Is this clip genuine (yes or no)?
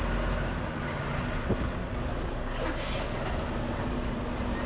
yes